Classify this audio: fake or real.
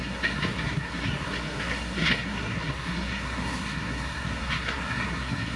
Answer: fake